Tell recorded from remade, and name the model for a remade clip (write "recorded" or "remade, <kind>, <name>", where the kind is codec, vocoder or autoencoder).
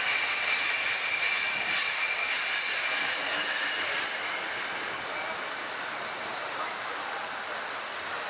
recorded